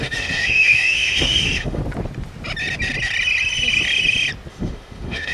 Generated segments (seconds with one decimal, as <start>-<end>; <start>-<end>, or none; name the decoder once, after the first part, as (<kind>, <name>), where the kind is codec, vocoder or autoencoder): 0.0-1.8 (autoencoder, DAC-VAE); 4.5-5.3